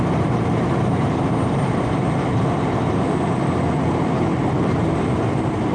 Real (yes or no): no